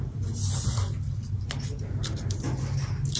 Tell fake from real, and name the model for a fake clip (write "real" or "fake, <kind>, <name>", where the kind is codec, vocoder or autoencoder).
real